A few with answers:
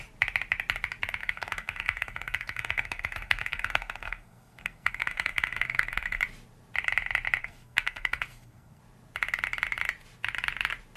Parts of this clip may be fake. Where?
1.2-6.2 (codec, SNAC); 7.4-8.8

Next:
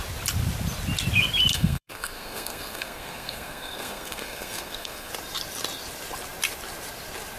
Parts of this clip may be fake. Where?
1.5-5.1 (codec, SNAC)

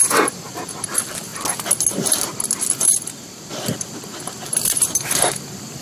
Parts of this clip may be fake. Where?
0.0-1.3 (vocoder, BigVGAN v2); 2.5-5.8

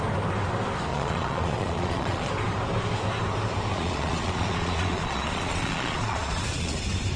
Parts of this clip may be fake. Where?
0.9-2.3 (vocoder, Vocos); 3.7-6.8